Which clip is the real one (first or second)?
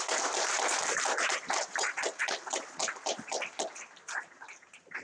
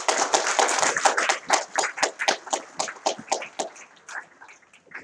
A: second